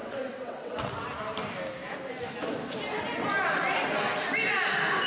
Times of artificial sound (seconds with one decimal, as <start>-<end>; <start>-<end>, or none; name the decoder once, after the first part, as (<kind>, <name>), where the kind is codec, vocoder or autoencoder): 0.0-0.9 (vocoder, WaveNeXt)